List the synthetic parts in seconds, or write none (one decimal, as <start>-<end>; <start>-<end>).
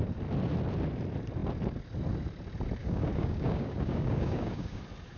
2.8-4.8